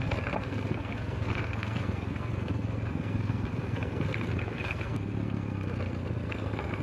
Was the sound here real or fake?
fake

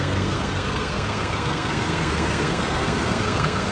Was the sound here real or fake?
fake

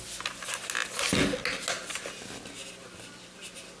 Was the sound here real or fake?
real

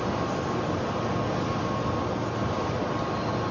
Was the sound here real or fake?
real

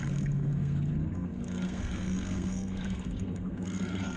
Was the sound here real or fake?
fake